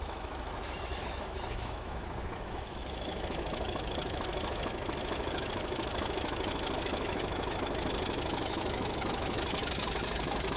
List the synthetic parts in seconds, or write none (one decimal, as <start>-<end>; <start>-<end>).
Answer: 0.0-10.6